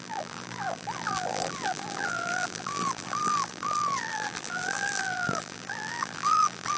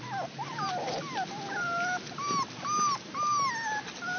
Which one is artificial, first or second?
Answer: first